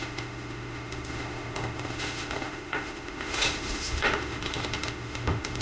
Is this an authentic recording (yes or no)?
no